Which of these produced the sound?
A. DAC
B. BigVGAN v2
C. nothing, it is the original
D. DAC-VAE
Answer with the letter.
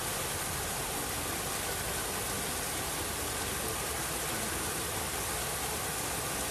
C